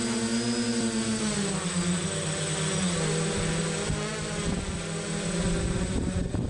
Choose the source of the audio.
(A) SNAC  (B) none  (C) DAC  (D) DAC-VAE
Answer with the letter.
B